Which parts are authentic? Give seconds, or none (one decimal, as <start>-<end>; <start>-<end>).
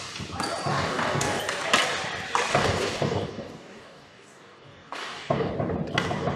0.0-0.7; 1.4-2.5; 5.5-6.4